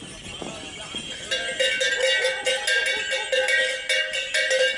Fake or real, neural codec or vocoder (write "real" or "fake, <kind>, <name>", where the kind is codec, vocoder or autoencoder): real